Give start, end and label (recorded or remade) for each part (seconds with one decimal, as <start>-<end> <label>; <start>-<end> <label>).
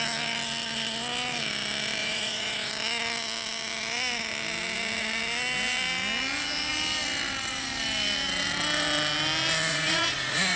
0.0-2.0 recorded; 2.0-2.7 remade; 2.7-9.7 recorded; 9.7-10.6 remade